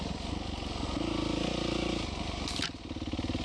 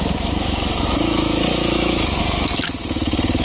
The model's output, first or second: second